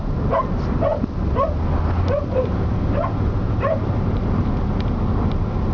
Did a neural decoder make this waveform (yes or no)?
no